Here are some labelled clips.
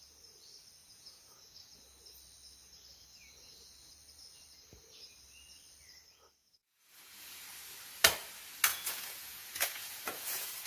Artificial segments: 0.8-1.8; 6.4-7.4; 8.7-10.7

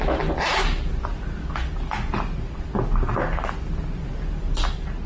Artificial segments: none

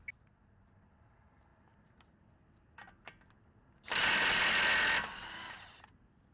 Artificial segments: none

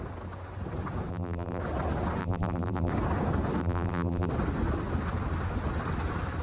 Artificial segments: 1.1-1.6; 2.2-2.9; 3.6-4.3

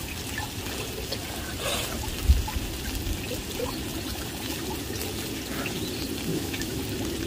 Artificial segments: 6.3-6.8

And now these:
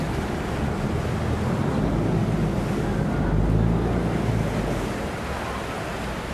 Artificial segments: none

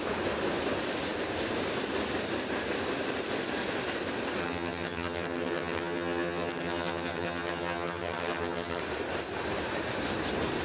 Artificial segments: 4.4-8.8